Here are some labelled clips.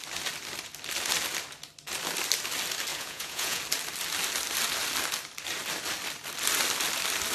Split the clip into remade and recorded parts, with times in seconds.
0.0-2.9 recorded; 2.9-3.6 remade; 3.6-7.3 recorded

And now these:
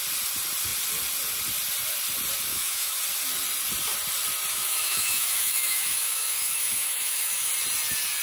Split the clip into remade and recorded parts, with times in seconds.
0.0-2.5 recorded; 2.5-3.0 remade; 3.0-4.5 recorded; 4.5-7.5 remade; 7.5-8.2 recorded

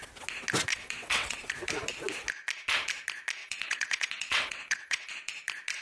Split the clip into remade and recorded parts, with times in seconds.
0.0-0.7 recorded; 0.7-1.5 remade; 1.5-3.4 recorded; 3.4-5.1 remade; 5.1-5.8 recorded

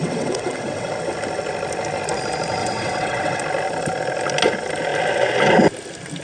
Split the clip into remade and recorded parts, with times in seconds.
0.0-0.9 remade; 0.9-2.6 recorded; 2.6-3.4 remade; 3.4-6.2 recorded

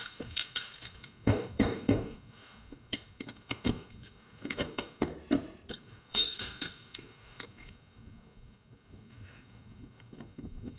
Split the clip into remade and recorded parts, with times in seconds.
0.0-5.1 remade; 5.1-5.7 recorded; 5.7-10.8 remade

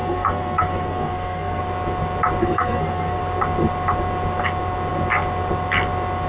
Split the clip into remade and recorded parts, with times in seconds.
0.0-1.6 remade; 1.6-2.4 recorded; 2.4-3.2 remade; 3.2-6.3 recorded

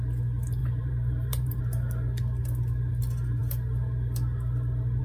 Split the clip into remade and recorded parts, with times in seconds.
0.0-0.6 recorded; 0.6-1.6 remade; 1.6-5.0 recorded